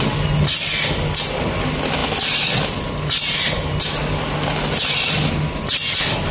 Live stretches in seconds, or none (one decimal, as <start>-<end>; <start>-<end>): 0.0-6.3